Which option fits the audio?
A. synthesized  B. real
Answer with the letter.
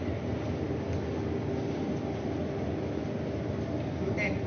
B